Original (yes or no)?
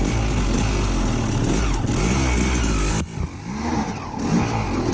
yes